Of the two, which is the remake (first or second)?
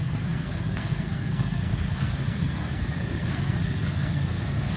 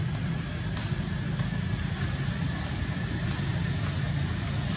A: first